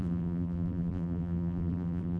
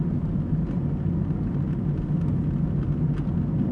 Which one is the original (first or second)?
second